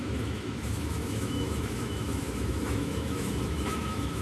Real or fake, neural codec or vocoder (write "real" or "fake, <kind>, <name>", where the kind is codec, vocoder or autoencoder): fake, autoencoder, DAC-VAE